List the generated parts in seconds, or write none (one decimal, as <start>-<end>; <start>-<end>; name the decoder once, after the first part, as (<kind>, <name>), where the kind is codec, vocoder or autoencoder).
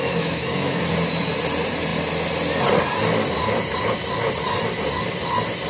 0.0-0.9 (autoencoder, DAC-VAE)